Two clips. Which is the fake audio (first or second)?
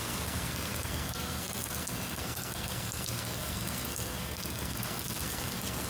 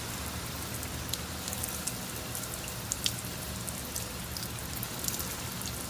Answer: first